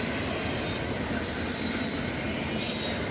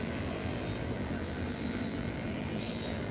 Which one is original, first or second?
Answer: first